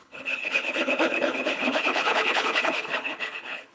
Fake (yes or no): yes